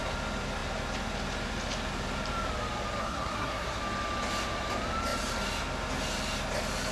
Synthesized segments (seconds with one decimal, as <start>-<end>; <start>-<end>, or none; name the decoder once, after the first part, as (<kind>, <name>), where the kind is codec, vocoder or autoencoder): 3.0-3.8 (codec, SNAC)